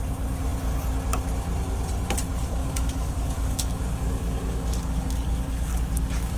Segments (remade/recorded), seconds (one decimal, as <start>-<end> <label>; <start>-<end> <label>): 0.0-2.6 recorded; 2.6-6.4 remade